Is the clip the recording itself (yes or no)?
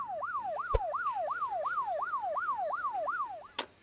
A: yes